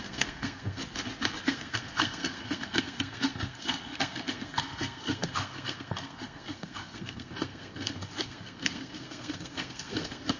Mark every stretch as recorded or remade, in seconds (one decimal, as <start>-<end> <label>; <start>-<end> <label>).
0.0-0.8 remade; 0.8-1.4 recorded; 1.4-10.4 remade